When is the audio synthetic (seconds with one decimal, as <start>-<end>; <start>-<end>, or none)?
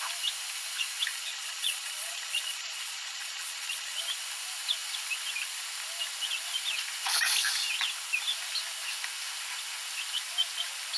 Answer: 1.1-4.0